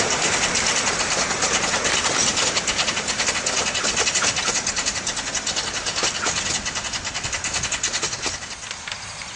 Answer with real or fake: real